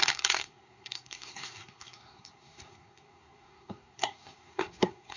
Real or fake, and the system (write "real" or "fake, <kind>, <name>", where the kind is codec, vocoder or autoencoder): fake, codec, SNAC